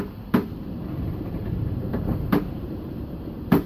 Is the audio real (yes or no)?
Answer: no